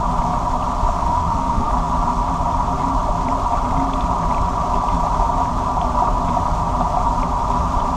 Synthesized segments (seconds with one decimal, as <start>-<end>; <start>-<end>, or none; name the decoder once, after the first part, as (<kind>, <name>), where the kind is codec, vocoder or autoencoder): 1.0-1.7 (autoencoder, DAC-VAE)